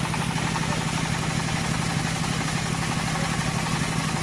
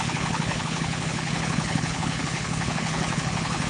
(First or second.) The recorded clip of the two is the first